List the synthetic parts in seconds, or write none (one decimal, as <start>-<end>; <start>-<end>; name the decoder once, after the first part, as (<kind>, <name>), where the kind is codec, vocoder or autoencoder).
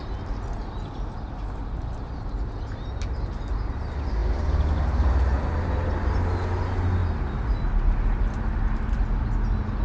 none